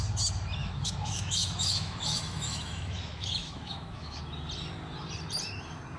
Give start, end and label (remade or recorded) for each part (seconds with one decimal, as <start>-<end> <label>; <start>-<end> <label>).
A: 0.0-0.6 recorded; 0.6-4.2 remade; 4.2-6.0 recorded